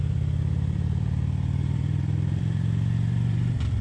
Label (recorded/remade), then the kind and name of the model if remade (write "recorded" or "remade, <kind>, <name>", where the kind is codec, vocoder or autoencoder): remade, vocoder, BigVGAN v2